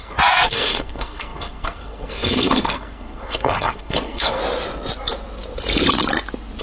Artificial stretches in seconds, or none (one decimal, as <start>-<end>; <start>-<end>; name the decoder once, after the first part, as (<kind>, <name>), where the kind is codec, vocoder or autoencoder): 0.0-4.4 (codec, SNAC)